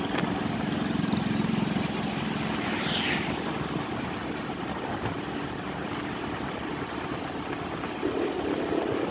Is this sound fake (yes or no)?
yes